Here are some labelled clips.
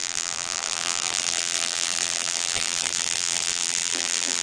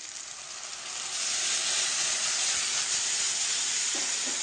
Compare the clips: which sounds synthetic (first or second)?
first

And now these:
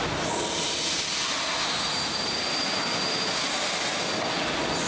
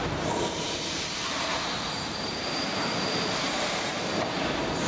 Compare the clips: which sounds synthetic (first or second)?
second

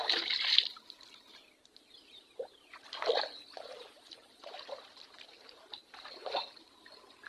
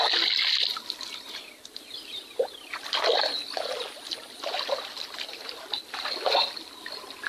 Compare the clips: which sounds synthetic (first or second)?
first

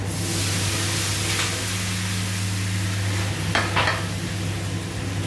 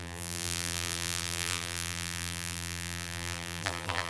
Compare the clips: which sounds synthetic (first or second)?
second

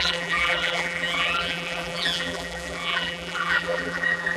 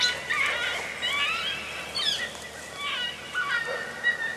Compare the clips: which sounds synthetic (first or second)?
first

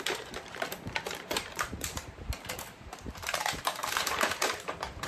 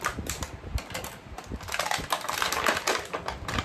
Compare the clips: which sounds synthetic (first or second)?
first